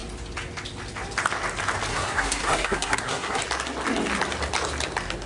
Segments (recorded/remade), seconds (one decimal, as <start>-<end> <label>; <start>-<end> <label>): 0.0-1.9 recorded; 1.9-3.4 remade; 3.4-5.3 recorded

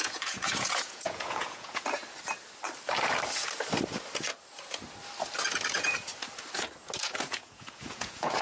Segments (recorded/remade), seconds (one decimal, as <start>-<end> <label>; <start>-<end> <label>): 0.0-2.0 remade; 2.0-7.0 recorded; 7.0-8.4 remade

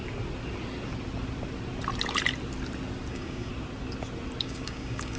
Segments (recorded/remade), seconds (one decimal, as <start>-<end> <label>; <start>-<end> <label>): 0.0-3.1 recorded; 3.1-3.5 remade; 3.5-4.4 recorded; 4.4-5.2 remade

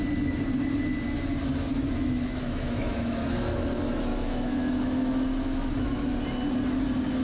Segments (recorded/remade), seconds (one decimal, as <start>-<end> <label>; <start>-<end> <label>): 0.0-1.7 recorded; 1.7-3.6 remade; 3.6-4.1 recorded; 4.1-6.1 remade; 6.1-7.2 recorded

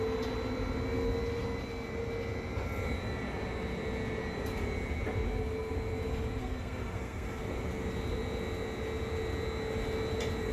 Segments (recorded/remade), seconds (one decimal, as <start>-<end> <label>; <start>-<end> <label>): 0.0-6.4 recorded; 6.4-7.5 remade; 7.5-10.5 recorded

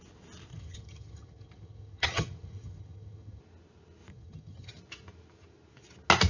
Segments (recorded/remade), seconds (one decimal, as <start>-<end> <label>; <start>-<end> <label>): 0.0-0.5 recorded; 0.5-3.4 remade; 3.4-4.1 recorded; 4.1-4.7 remade; 4.7-6.3 recorded

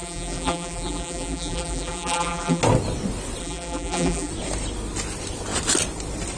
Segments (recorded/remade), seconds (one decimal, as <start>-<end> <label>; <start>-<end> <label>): 0.0-2.6 remade; 2.6-3.4 recorded; 3.4-4.3 remade; 4.3-6.4 recorded